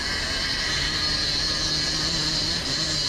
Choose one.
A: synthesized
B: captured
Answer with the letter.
B